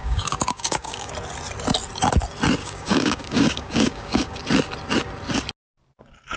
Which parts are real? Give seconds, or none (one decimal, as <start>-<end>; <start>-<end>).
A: 1.1-2.6; 4.4-6.4